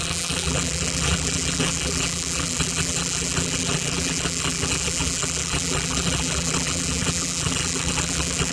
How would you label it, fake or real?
fake